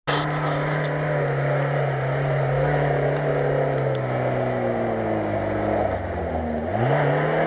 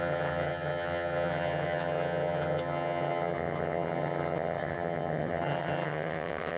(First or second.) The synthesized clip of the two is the second